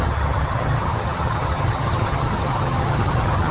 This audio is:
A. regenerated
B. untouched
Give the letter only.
A